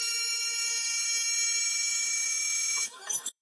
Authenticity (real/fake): fake